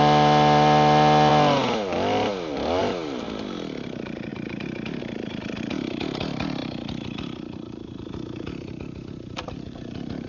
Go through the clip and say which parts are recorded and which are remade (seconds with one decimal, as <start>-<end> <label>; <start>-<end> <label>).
0.0-4.3 recorded; 4.3-5.0 remade; 5.0-10.3 recorded